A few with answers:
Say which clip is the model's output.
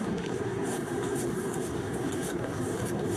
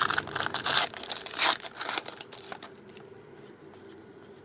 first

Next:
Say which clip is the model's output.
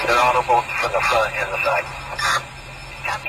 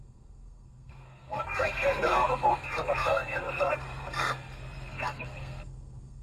second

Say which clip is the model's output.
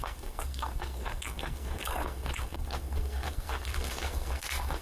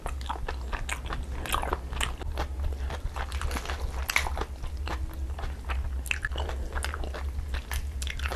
first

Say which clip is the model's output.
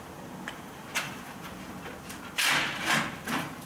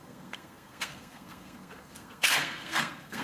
second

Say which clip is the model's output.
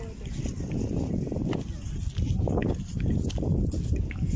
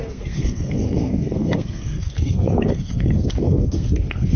second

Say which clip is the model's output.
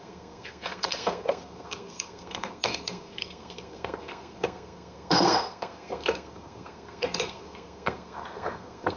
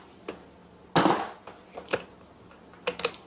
first